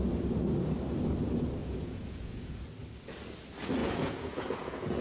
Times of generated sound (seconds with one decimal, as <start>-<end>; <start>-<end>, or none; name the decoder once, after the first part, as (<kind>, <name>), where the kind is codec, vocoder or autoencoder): 1.6-2.6 (vocoder, Vocos); 3.8-5.0